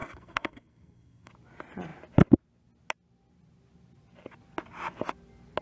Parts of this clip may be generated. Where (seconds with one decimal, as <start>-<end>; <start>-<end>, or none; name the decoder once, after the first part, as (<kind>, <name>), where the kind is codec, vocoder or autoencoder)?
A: 0.0-1.3 (codec, SNAC)